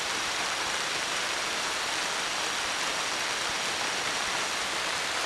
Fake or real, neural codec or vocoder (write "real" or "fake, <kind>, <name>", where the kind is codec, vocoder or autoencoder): real